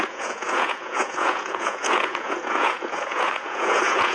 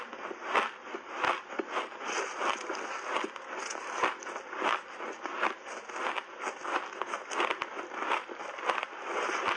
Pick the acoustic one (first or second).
second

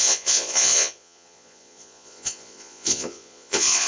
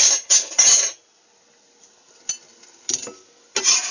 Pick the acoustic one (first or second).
second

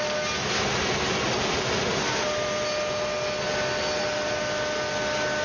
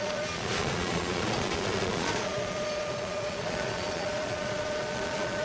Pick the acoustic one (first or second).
first